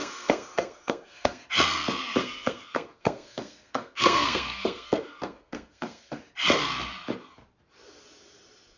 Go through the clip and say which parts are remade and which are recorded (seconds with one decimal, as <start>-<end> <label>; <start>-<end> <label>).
0.0-1.4 remade; 1.4-2.2 recorded; 2.2-6.2 remade; 6.2-8.8 recorded